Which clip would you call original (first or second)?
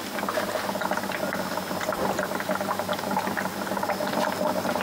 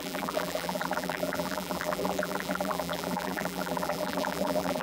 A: first